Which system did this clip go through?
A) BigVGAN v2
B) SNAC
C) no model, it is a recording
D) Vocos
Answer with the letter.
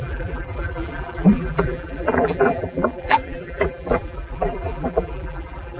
A